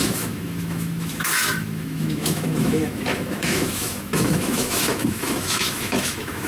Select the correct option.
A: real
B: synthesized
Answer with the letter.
B